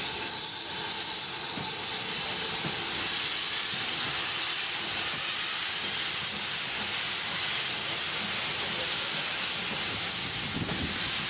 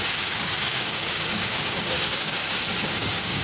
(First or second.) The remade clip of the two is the second